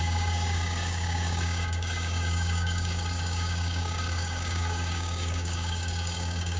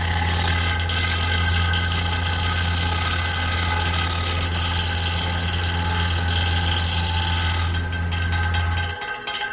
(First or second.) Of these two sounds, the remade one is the first